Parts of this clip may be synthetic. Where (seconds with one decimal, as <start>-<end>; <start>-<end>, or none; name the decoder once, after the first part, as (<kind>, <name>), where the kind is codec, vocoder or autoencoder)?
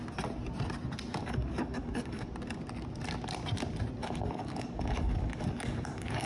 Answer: 1.2-2.3 (codec, DAC); 4.0-6.3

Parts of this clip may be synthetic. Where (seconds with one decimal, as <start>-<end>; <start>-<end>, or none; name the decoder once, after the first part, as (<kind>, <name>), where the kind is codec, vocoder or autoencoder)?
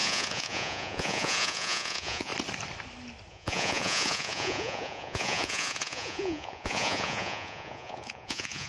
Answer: 0.0-2.3 (vocoder, Vocos); 3.3-8.7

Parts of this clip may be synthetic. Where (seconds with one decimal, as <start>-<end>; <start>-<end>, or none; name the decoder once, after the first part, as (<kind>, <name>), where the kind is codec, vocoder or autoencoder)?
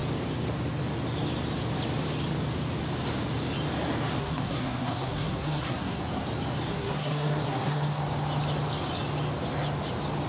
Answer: 4.2-6.0 (codec, SNAC); 6.7-8.0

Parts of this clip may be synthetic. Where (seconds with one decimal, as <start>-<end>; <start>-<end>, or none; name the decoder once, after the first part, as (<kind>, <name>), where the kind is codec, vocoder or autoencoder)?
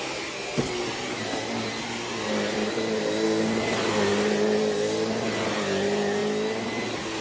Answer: none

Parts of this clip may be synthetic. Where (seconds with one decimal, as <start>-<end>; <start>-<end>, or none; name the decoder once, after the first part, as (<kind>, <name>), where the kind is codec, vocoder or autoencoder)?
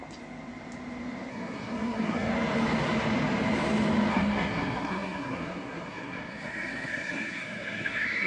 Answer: 1.3-2.3 (codec, SNAC); 4.1-8.3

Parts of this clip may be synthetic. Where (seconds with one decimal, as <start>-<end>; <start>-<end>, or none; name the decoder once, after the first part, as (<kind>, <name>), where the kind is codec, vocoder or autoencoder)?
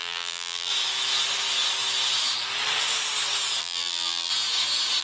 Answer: 0.0-0.7 (vocoder, BigVGAN v2); 3.6-4.3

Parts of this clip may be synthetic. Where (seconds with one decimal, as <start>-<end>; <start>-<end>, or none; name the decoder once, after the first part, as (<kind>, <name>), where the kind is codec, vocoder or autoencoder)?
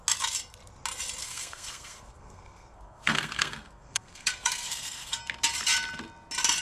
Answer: 1.2-5.2 (codec, SNAC)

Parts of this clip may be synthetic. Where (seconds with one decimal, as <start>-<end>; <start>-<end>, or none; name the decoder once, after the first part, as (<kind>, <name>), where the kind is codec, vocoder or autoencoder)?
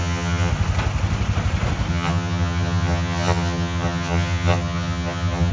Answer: 0.0-0.5 (vocoder, HiFi-GAN); 1.9-5.5